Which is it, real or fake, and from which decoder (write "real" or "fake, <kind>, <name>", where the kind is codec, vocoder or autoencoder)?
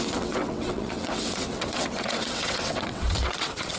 fake, vocoder, WaveNeXt